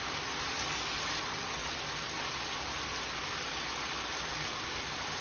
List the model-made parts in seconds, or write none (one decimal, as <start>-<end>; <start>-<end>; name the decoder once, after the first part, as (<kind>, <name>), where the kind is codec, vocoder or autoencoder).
none